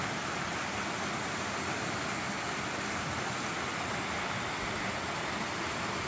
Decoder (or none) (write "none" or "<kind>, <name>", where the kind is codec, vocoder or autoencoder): none